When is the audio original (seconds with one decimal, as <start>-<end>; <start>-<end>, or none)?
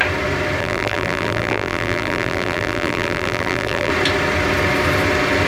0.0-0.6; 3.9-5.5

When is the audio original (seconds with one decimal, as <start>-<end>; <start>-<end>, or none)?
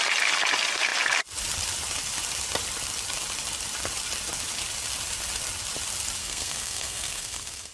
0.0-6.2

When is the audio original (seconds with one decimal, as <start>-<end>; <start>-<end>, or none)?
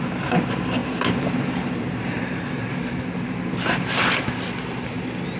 0.0-5.4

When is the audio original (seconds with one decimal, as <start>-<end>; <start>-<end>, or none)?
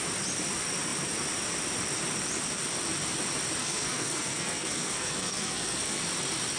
0.0-3.6; 6.0-6.6